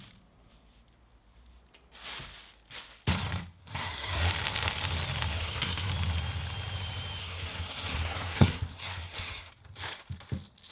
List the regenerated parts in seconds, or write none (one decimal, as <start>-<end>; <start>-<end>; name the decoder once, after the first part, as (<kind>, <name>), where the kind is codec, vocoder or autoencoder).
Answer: 3.6-4.3 (codec, SNAC); 5.3-5.9; 7.2-9.5